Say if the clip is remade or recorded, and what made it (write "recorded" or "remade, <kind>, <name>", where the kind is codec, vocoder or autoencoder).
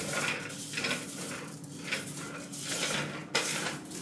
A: recorded